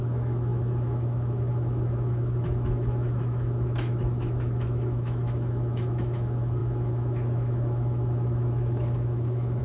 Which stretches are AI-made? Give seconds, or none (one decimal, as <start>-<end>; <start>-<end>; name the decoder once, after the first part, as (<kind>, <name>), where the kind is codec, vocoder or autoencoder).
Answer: 0.0-9.6 (autoencoder, DAC-VAE)